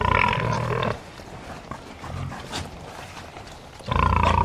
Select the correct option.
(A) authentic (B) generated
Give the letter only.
A